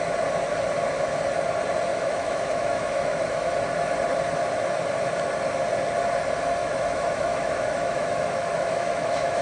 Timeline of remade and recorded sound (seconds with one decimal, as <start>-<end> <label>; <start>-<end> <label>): 0.0-1.9 recorded; 1.9-3.5 remade; 3.5-6.6 recorded; 6.6-9.4 remade